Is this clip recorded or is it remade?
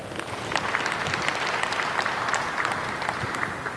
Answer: recorded